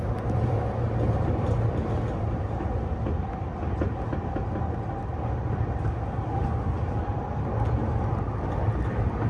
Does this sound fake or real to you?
real